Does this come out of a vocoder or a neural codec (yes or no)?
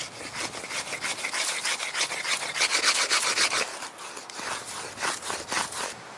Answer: no